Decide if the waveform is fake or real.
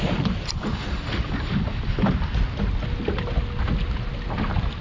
real